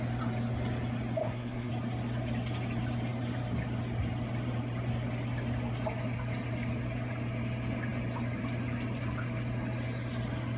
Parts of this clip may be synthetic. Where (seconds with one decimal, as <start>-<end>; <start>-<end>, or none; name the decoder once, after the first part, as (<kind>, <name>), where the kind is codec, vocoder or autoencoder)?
1.2-1.7 (codec, SNAC)